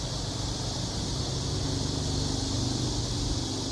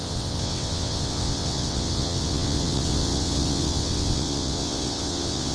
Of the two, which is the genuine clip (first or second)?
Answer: first